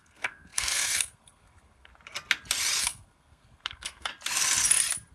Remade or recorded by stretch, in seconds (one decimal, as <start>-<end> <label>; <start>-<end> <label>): 0.0-1.9 remade; 1.9-2.8 recorded; 2.8-4.1 remade; 4.1-5.1 recorded